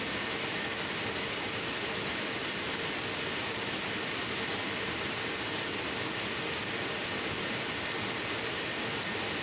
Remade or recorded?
recorded